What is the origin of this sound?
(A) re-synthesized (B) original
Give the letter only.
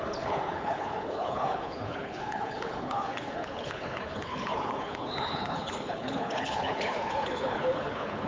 A